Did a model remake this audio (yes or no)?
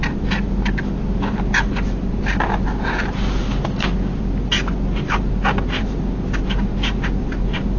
no